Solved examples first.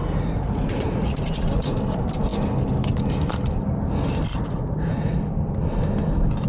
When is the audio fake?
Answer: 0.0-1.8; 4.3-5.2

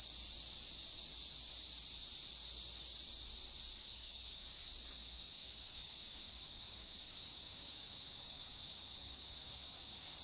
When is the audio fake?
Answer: 3.8-4.6; 5.0-10.2

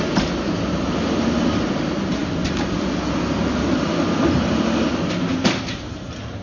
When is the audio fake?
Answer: none